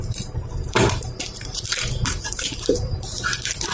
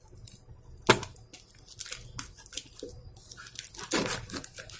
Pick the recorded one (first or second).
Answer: second